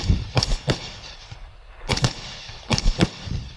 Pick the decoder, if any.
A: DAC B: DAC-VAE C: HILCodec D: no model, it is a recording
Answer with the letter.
C